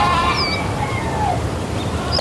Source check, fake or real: fake